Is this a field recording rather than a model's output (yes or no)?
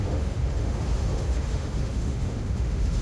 no